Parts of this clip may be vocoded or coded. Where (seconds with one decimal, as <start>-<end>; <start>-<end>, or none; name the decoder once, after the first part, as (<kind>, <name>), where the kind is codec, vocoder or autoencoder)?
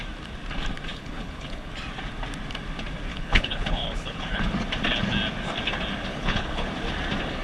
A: 0.9-1.7 (codec, HILCodec); 3.1-4.4; 6.1-6.7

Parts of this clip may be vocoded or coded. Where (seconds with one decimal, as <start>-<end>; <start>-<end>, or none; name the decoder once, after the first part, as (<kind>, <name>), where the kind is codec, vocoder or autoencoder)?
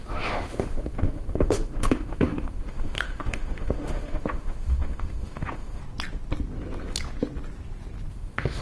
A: 0.0-5.8 (autoencoder, DAC-VAE); 8.1-8.6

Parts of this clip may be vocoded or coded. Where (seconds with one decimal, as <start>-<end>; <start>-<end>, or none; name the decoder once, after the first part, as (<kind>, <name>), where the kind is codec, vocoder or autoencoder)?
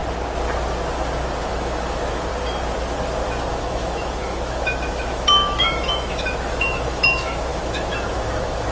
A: 1.4-2.3 (autoencoder, DAC-VAE); 3.5-8.7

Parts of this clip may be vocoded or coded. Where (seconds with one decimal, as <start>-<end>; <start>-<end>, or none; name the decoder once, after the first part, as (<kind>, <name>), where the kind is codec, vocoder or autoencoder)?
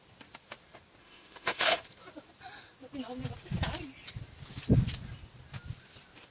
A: 1.0-1.8 (autoencoder, DAC-VAE)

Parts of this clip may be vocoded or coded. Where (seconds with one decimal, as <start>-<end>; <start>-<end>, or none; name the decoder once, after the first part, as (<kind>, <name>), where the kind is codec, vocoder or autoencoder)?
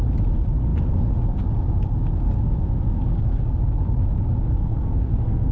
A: 4.6-5.5 (codec, SNAC)